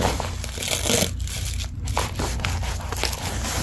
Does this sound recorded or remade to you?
recorded